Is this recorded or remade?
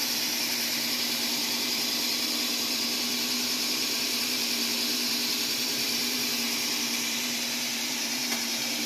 remade